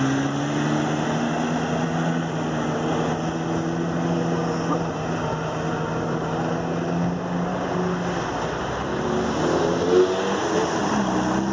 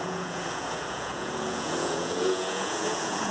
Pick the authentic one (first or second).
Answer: first